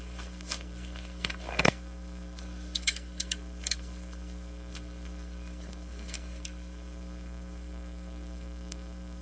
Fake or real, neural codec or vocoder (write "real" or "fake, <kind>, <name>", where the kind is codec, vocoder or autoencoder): fake, codec, SNAC